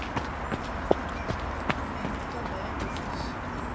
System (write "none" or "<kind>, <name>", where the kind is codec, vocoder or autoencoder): none